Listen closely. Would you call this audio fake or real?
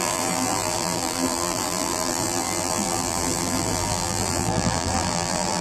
fake